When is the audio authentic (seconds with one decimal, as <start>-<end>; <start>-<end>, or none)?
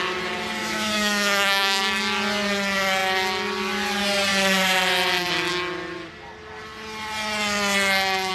0.0-0.6; 1.8-8.3